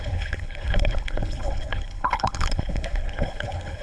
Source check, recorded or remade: remade